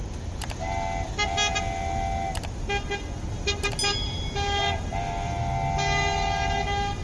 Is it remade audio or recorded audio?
recorded